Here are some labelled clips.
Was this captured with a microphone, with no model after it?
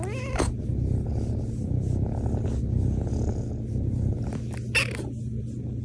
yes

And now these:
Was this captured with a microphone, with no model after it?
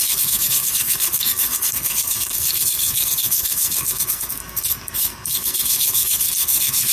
no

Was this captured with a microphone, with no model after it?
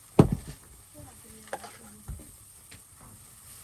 yes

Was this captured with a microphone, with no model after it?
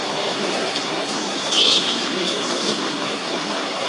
no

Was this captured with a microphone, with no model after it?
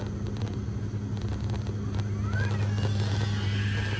yes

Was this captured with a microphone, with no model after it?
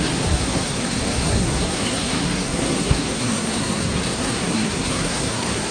no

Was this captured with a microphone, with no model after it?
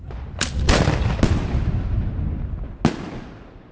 yes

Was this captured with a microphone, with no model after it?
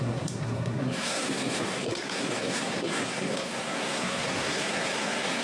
no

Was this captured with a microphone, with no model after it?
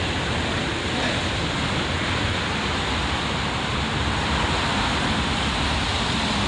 yes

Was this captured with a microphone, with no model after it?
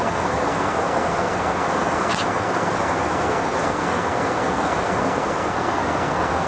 no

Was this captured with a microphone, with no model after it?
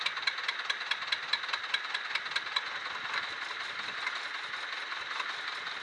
yes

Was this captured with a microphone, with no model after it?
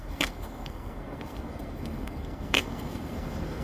no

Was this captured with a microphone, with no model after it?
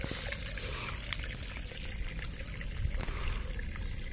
yes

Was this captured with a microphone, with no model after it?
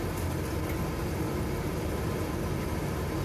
yes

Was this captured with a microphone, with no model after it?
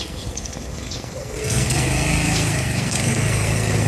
no